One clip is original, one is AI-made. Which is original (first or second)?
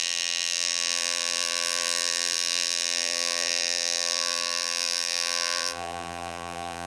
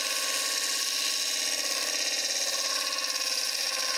second